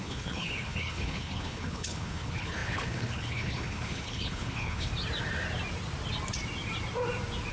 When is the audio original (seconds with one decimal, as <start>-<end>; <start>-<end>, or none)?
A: 4.9-7.5